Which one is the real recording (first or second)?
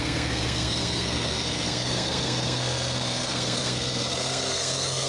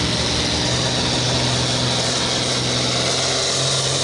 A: second